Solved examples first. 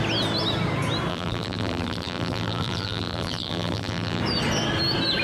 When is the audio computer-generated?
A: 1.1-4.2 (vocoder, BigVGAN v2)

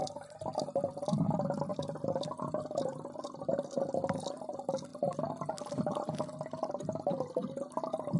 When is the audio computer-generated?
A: 0.0-0.6 (vocoder, BigVGAN v2); 1.7-3.7